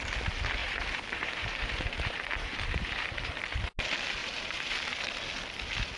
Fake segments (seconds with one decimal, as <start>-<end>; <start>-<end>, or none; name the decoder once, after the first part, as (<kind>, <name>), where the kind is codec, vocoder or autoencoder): 0.6-3.3 (vocoder, BigVGAN v2); 4.2-4.8